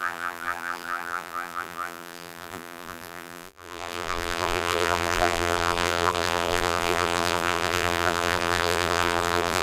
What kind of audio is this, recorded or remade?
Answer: remade